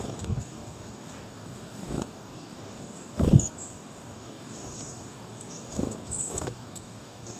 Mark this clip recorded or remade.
remade